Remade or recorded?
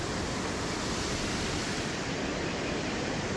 recorded